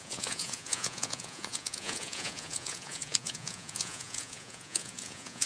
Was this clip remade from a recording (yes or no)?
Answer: yes